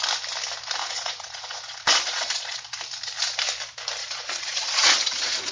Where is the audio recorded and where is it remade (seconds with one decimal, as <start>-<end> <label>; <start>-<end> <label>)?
0.0-0.8 recorded; 0.8-2.6 remade; 2.6-4.0 recorded; 4.0-5.5 remade